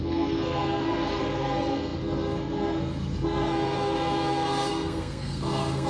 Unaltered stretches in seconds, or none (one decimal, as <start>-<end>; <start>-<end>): none